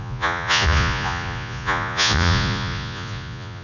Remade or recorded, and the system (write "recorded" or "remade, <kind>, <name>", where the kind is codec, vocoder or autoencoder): remade, vocoder, Vocos